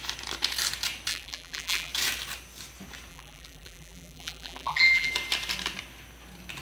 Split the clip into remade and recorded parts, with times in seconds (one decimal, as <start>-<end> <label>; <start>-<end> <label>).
0.0-1.1 recorded; 1.1-1.9 remade; 1.9-3.1 recorded; 3.1-5.1 remade; 5.1-6.6 recorded